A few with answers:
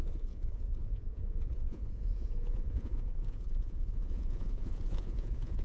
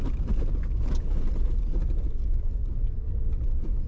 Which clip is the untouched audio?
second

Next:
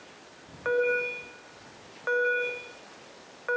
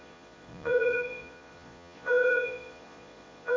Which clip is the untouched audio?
first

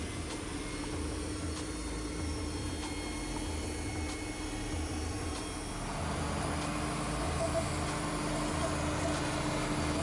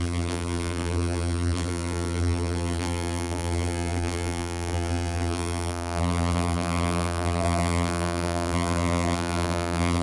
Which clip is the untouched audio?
first